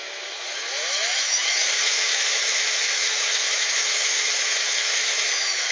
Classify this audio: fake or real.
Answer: fake